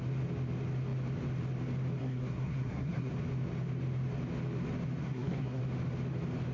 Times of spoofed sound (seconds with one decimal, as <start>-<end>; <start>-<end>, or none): 2.0-3.1; 5.0-5.6